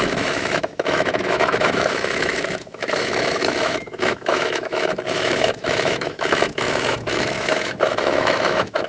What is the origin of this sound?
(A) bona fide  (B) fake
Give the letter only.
B